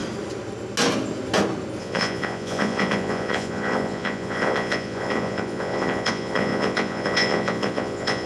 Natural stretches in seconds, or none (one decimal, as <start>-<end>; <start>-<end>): 0.0-1.8